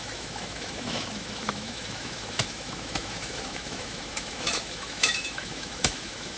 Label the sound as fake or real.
fake